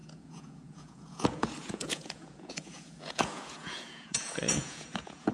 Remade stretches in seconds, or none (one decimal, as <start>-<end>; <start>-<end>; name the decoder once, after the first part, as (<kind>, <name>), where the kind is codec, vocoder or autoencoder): 0.0-5.3 (vocoder, Vocos)